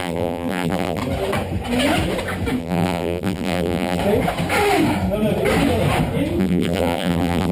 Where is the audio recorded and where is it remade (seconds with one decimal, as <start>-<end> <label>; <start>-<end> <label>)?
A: 0.0-1.0 remade; 1.0-2.6 recorded; 2.6-4.0 remade; 4.0-6.4 recorded; 6.4-7.5 remade